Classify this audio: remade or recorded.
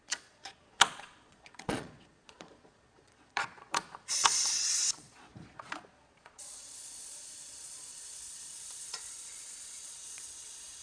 remade